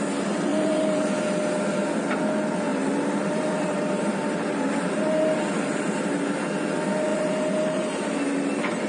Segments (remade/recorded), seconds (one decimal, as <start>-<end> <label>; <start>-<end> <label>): 0.0-0.5 recorded; 0.5-1.1 remade; 1.1-2.7 recorded; 2.7-6.0 remade; 6.0-7.1 recorded; 7.1-8.2 remade; 8.2-8.9 recorded